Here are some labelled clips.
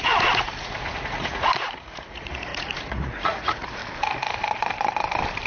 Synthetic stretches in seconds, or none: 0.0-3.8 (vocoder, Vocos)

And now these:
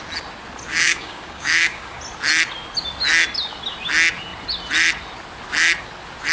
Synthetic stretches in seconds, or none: 0.7-2.0 (codec, DAC)

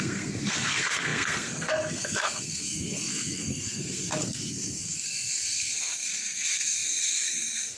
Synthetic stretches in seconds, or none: 0.0-7.8 (codec, SNAC)

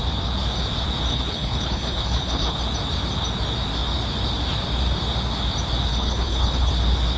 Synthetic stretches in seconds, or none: 1.1-2.6 (codec, HILCodec); 5.9-6.7